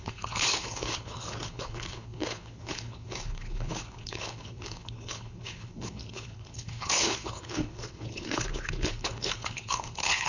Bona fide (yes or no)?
no